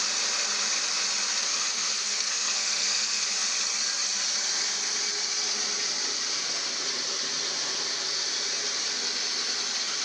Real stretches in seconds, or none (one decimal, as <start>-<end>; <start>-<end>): 0.0-1.4; 3.2-10.0